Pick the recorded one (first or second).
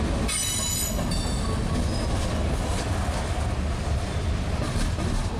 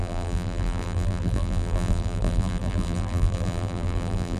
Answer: first